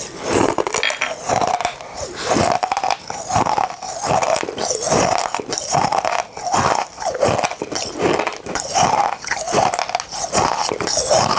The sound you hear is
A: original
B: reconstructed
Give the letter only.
A